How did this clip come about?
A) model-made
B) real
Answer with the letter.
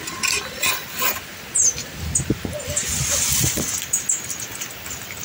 B